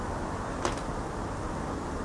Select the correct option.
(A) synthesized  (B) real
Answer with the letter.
B